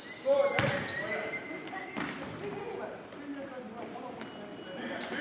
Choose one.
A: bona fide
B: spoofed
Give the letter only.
A